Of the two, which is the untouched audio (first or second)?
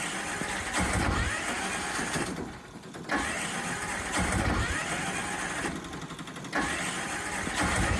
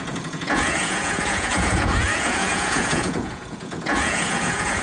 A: first